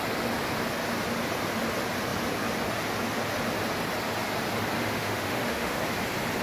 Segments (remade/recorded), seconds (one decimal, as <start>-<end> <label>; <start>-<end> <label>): 0.0-4.8 recorded; 4.8-5.8 remade; 5.8-6.4 recorded